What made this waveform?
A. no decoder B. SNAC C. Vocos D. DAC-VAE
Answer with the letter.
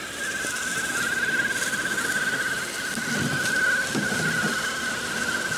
A